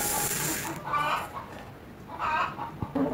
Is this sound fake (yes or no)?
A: no